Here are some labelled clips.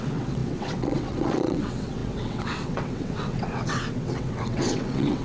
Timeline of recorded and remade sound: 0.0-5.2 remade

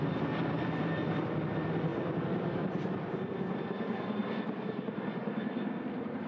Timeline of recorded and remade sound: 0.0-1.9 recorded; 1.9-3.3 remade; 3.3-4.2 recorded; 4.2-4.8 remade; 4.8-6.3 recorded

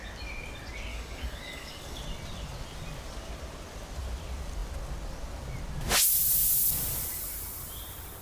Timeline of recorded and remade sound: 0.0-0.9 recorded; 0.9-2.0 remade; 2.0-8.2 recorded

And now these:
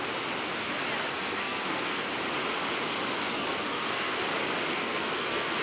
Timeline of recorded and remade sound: 0.0-1.0 recorded; 1.0-2.0 remade; 2.0-3.2 recorded; 3.2-4.1 remade; 4.1-4.7 recorded; 4.7-5.6 remade

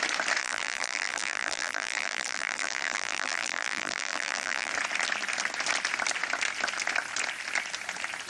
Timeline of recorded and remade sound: 0.0-0.4 recorded; 0.4-4.7 remade; 4.7-8.3 recorded